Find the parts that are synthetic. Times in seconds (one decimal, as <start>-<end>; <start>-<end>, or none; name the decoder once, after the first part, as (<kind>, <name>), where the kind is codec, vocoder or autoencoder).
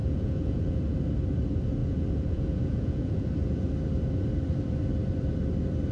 0.0-0.8 (vocoder, Vocos); 1.8-3.3